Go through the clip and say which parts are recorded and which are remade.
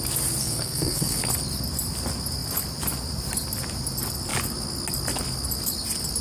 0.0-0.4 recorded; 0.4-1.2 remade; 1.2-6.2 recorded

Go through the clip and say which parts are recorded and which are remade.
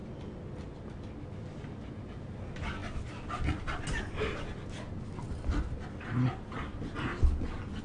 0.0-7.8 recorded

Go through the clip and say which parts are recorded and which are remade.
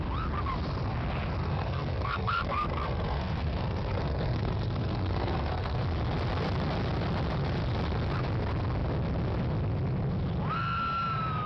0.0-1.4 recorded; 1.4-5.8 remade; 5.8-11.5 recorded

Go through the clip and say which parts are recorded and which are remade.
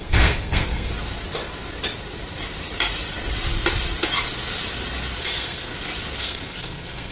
0.0-0.9 remade; 0.9-5.2 recorded; 5.2-5.7 remade; 5.7-6.2 recorded; 6.2-7.1 remade